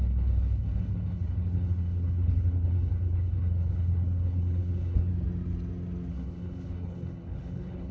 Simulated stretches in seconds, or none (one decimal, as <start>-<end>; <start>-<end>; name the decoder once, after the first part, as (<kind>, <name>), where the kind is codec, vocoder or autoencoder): 0.0-5.1 (codec, HILCodec); 6.1-7.9